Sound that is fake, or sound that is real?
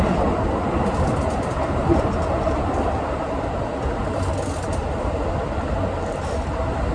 real